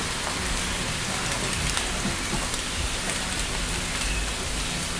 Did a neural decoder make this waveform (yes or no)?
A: no